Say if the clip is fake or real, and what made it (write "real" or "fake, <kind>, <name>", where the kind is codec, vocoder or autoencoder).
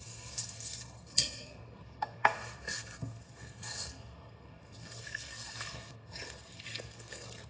fake, codec, SNAC